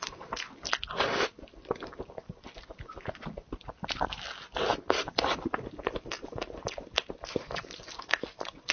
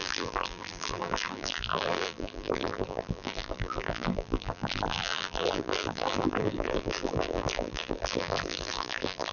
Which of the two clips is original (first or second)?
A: first